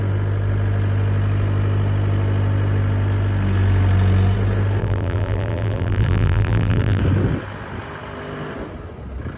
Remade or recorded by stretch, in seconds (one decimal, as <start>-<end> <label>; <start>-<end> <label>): 0.0-4.8 recorded; 4.8-7.0 remade; 7.0-9.4 recorded